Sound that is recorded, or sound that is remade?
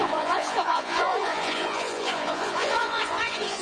remade